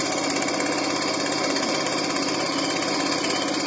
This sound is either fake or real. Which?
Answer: real